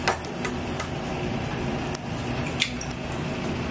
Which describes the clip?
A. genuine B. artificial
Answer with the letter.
A